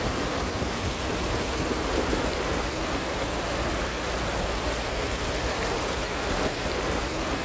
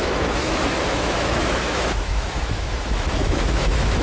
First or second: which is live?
first